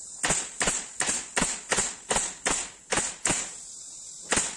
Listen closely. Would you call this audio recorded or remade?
recorded